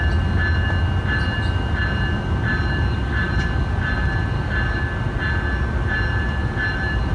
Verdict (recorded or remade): recorded